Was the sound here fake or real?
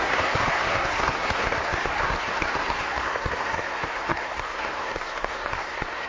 fake